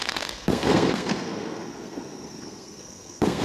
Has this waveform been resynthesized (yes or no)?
yes